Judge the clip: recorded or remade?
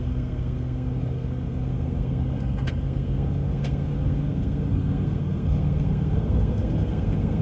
remade